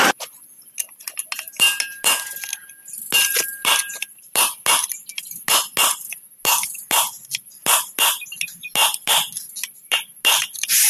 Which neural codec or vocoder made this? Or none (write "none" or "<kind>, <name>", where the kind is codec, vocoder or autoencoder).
none